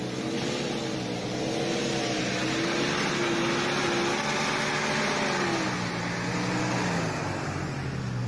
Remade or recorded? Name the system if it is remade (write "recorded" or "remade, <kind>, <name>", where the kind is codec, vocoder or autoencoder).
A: recorded